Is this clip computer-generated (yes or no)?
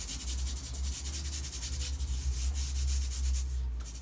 no